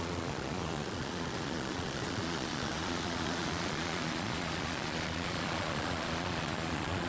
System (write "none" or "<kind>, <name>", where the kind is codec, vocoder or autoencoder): vocoder, Vocos